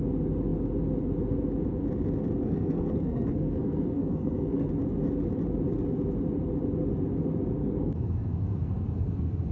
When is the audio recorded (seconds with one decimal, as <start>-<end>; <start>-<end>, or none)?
0.0-2.4; 4.7-7.6